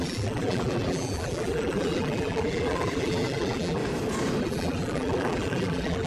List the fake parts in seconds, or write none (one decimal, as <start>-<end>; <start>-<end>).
0.0-3.8; 4.4-6.1